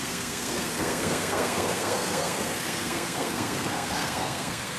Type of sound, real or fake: fake